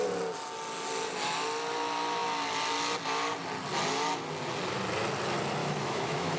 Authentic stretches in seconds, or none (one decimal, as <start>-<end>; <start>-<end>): 0.0-5.6